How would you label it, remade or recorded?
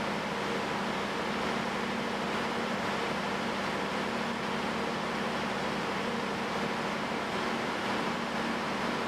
recorded